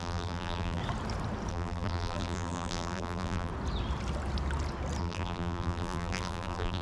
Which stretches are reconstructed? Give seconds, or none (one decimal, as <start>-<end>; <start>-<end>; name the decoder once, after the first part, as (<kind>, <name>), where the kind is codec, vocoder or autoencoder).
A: 0.0-0.8 (vocoder, BigVGAN v2); 1.5-3.5; 5.0-6.8

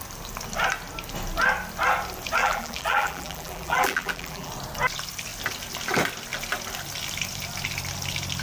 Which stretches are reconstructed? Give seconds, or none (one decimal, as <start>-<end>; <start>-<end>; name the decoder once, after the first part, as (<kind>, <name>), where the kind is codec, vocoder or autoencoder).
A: 2.4-4.5 (vocoder, BigVGAN v2)

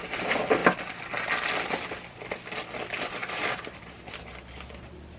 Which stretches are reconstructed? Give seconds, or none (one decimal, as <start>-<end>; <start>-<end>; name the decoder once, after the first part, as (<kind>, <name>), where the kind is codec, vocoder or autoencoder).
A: 3.2-4.2 (vocoder, BigVGAN v2)

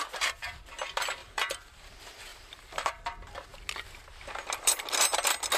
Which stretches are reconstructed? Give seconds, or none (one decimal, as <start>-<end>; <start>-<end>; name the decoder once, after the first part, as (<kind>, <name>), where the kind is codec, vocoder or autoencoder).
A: 1.2-1.9 (vocoder, BigVGAN v2); 2.3-2.9

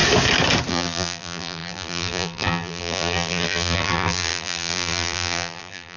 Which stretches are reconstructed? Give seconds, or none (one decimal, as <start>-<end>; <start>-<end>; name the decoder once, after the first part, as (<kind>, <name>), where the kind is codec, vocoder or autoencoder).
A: 0.7-6.0 (vocoder, BigVGAN v2)

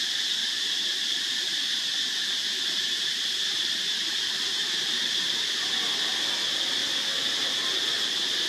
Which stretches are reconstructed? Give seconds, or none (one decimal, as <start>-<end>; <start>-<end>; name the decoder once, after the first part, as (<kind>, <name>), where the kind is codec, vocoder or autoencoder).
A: 0.4-5.0 (vocoder, BigVGAN v2)

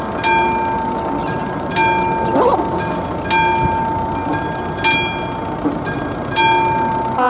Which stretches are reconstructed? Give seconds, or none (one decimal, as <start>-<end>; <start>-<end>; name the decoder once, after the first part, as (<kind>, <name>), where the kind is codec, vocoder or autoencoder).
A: 1.2-1.7 (vocoder, BigVGAN v2)

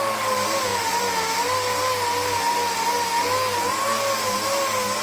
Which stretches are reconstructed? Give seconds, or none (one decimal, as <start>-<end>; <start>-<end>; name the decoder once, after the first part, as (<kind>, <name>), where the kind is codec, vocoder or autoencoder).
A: none